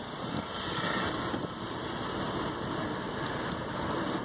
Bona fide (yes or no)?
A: yes